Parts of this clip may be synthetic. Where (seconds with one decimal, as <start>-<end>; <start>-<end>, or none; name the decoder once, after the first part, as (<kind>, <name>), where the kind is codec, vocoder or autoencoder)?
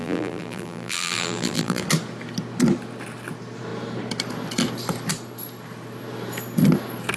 0.0-1.8 (vocoder, BigVGAN v2)